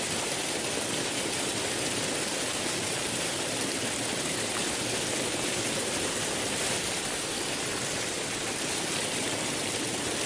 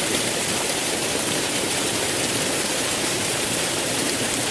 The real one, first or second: first